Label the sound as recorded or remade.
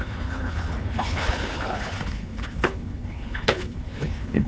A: remade